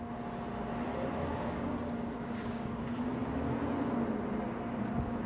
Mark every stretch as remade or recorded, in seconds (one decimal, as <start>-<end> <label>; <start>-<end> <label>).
0.0-1.3 recorded; 1.3-3.0 remade; 3.0-5.3 recorded